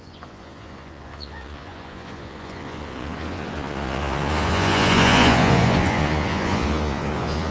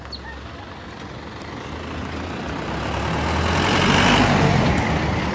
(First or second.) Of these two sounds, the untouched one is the second